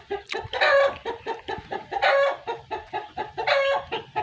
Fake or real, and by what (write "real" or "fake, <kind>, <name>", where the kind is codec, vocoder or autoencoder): real